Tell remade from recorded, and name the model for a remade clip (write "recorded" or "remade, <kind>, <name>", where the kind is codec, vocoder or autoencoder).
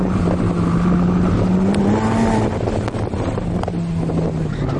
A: recorded